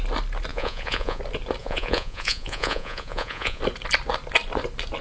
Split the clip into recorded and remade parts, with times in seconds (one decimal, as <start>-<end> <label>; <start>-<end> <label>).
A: 0.0-0.5 recorded; 0.5-1.2 remade; 1.2-1.6 recorded; 1.6-3.6 remade; 3.6-5.0 recorded

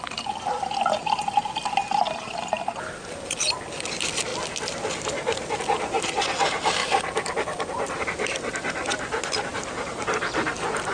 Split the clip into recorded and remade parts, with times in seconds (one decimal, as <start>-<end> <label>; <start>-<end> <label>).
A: 0.0-6.8 recorded; 6.8-8.0 remade; 8.0-10.9 recorded

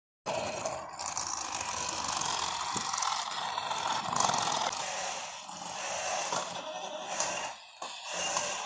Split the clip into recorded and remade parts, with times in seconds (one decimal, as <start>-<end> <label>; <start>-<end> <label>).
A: 0.0-8.7 recorded

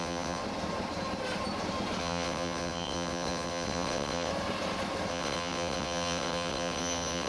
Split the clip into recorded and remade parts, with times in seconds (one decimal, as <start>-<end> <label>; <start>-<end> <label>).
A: 0.0-0.4 remade; 0.4-2.0 recorded; 2.0-4.3 remade; 4.3-5.1 recorded; 5.1-7.3 remade

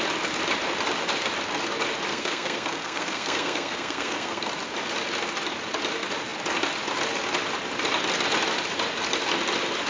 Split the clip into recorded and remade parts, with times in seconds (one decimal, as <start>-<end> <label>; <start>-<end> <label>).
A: 0.0-2.1 recorded; 2.1-4.5 remade; 4.5-9.9 recorded

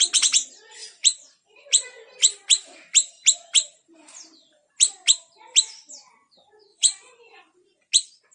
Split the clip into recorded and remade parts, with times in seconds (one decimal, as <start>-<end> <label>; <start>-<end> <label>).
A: 0.0-6.7 recorded; 6.7-7.4 remade; 7.4-8.3 recorded